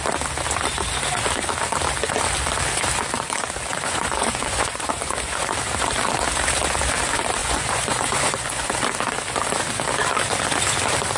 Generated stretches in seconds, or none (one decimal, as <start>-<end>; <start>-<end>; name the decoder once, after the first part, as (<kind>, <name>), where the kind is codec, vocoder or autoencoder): 3.7-5.5 (vocoder, Vocos); 7.4-8.6